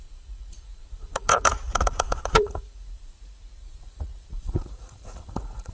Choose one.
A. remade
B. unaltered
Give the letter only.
A